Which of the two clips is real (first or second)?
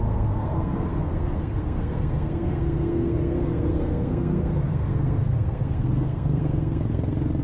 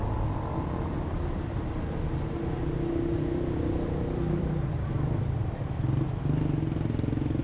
second